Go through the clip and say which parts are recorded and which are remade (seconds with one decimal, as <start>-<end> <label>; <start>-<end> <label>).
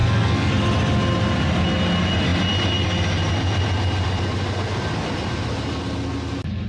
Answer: 0.0-0.5 remade; 0.5-6.7 recorded